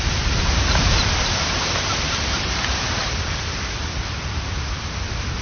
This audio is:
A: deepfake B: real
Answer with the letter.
A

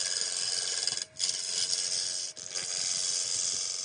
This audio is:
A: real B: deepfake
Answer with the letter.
B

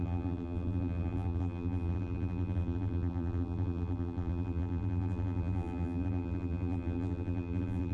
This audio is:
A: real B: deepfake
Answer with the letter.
B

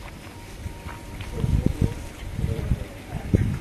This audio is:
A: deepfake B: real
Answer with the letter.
A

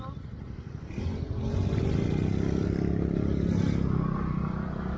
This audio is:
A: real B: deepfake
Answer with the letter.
A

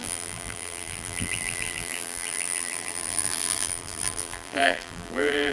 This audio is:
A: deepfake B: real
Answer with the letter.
A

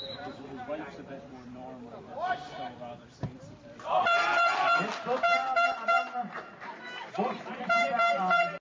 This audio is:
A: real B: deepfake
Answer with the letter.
B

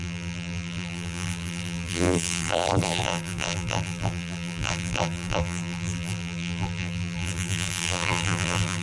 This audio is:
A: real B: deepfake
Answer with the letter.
B